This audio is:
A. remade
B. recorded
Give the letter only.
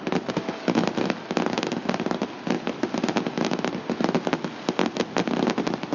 B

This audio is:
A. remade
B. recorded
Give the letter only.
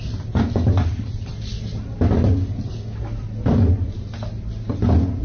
B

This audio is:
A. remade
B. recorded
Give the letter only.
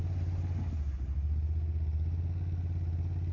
B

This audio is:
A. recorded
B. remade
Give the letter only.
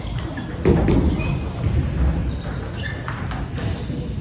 A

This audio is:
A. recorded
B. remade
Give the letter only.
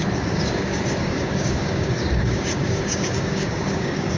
B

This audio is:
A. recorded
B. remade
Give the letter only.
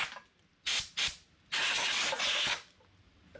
A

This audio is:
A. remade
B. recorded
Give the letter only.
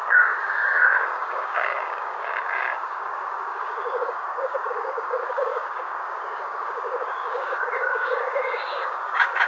A